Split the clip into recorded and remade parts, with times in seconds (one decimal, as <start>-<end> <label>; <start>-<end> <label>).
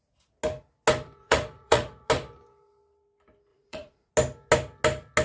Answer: 0.0-1.2 recorded; 1.2-2.1 remade; 2.1-3.5 recorded; 3.5-4.1 remade; 4.1-5.2 recorded